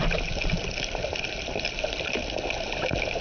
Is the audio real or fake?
fake